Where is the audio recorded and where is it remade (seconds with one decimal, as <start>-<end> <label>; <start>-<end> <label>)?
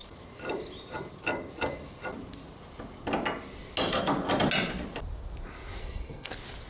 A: 0.0-5.8 recorded; 5.8-6.3 remade; 6.3-6.7 recorded